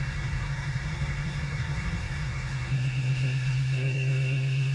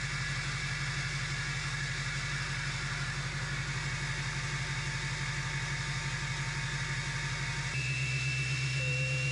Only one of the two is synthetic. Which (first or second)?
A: first